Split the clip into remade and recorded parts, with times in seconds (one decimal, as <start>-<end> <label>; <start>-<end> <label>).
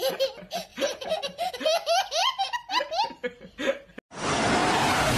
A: 0.0-0.7 recorded; 0.7-1.5 remade; 1.5-2.2 recorded; 2.2-2.7 remade; 2.7-4.6 recorded; 4.6-5.2 remade